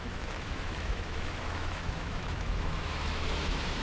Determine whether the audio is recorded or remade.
remade